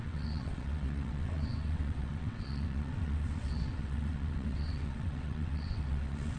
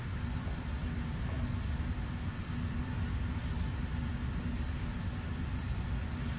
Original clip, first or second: second